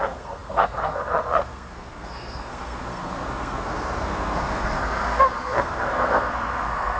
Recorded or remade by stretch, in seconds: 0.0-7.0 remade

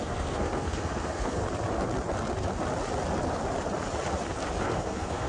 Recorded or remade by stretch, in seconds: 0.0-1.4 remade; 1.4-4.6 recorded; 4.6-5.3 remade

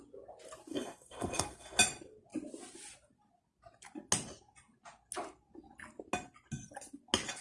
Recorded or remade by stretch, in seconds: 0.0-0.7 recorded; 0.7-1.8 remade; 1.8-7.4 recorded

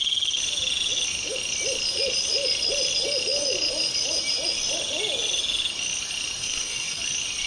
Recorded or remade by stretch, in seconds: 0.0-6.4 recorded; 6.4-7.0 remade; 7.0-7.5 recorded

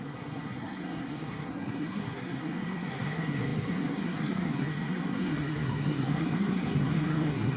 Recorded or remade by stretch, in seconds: 0.0-7.6 remade

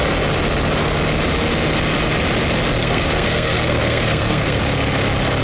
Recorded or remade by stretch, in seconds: 0.0-2.8 recorded; 2.8-4.6 remade; 4.6-5.4 recorded

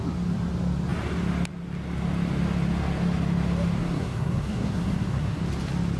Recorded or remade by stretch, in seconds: 0.0-3.8 recorded; 3.8-5.4 remade; 5.4-6.0 recorded